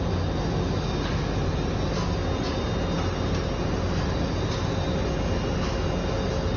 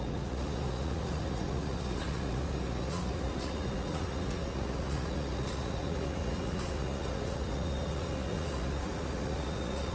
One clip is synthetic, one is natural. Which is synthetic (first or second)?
second